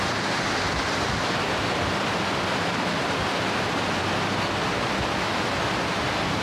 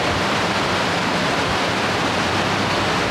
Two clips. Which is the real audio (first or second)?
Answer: first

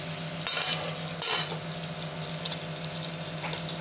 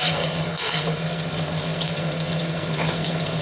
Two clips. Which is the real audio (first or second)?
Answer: first